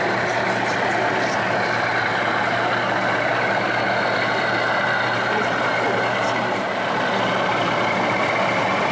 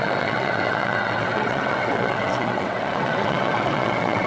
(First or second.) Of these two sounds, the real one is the first